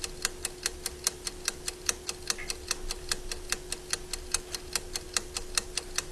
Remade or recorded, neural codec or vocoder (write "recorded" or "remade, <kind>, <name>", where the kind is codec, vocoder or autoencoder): recorded